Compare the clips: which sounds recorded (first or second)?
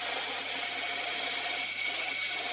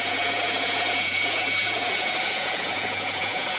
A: first